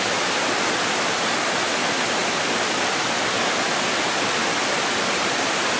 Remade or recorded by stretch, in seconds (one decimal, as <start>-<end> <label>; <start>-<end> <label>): 0.0-2.2 recorded; 2.2-5.8 remade

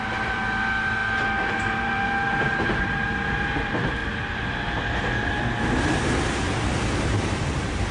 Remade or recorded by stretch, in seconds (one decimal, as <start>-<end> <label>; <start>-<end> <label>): 0.0-4.0 remade; 4.0-7.0 recorded; 7.0-7.9 remade